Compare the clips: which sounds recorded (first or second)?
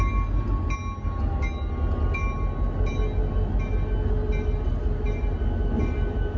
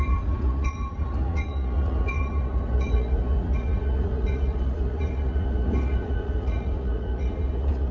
first